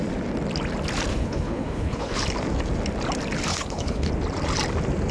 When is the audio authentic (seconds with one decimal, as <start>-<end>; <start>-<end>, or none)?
0.0-1.1; 2.2-3.5; 4.1-5.1